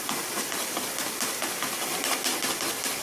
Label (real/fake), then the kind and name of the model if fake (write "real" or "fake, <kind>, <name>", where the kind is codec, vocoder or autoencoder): real